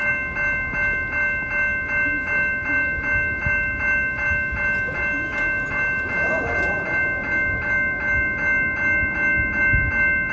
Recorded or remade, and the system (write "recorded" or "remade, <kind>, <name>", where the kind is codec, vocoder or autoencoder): recorded